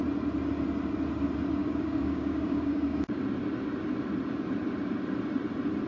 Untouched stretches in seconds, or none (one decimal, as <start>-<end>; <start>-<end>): 0.0-1.6; 3.2-5.9